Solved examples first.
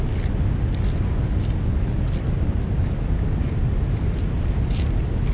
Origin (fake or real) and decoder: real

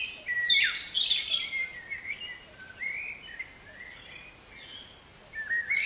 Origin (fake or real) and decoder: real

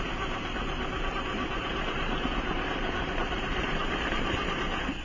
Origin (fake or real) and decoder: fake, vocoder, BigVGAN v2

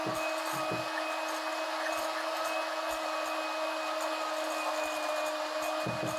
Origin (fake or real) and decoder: real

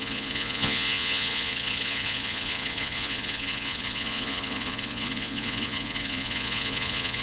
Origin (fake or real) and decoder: fake, vocoder, Vocos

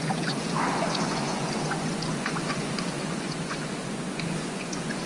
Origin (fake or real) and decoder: fake, vocoder, Vocos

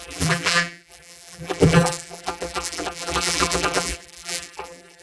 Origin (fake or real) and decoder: fake, vocoder, BigVGAN v2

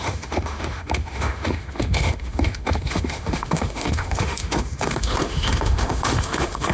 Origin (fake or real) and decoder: fake, autoencoder, DAC-VAE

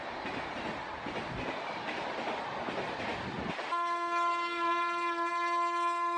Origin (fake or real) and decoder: real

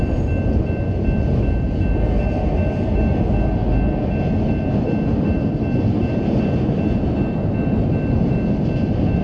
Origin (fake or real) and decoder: real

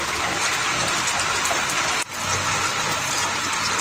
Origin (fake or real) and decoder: real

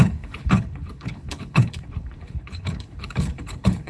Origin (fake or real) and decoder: fake, codec, HILCodec